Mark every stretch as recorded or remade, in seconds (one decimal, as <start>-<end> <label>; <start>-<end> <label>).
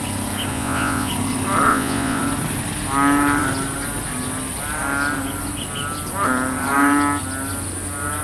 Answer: 0.0-0.5 recorded; 0.5-1.1 remade; 1.1-1.7 recorded; 1.7-2.2 remade; 2.2-8.2 recorded